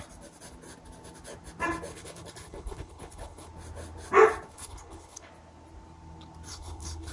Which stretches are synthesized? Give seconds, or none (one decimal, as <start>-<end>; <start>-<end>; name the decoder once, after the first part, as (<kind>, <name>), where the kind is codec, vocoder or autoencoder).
1.9-3.5 (codec, HILCodec); 4.5-5.3; 6.5-7.1